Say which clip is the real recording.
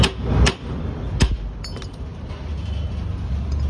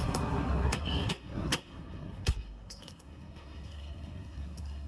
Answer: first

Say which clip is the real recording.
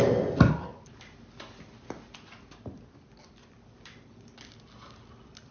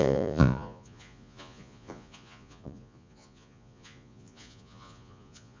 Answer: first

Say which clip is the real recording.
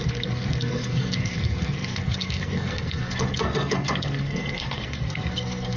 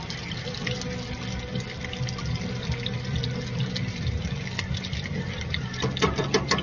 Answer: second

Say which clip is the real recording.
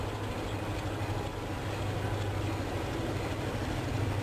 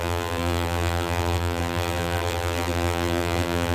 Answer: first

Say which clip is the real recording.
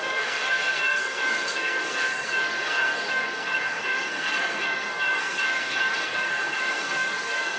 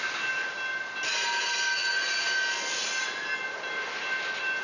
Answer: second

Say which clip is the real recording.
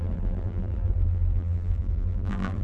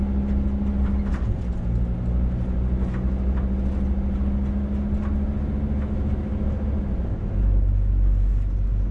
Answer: second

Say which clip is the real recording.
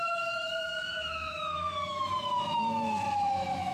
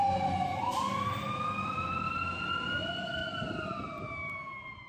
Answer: second